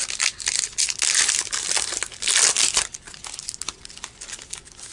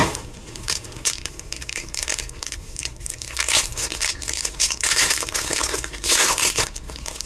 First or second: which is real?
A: first